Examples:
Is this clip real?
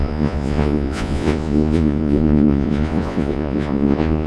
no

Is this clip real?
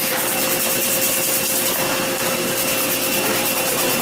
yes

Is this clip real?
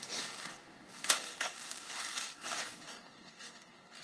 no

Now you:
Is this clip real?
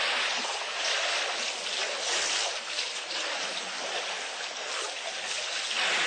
yes